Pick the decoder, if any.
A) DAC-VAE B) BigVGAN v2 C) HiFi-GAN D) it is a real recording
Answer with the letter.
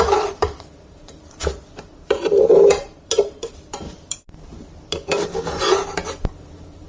B